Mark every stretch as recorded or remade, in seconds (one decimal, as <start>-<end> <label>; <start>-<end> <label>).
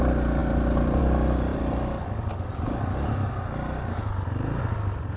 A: 0.0-0.4 recorded; 0.4-1.0 remade; 1.0-1.5 recorded; 1.5-3.3 remade; 3.3-5.2 recorded